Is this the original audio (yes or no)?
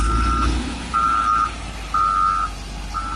yes